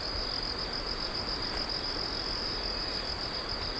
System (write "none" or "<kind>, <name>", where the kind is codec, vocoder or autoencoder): none